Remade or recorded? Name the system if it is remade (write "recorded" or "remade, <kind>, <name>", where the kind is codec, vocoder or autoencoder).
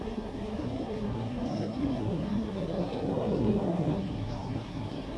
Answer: remade, codec, SNAC